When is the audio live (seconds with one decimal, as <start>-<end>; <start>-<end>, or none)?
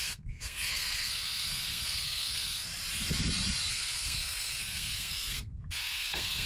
2.7-3.7